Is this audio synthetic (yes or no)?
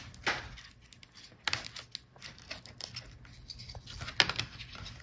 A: no